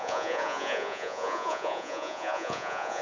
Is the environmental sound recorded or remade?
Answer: remade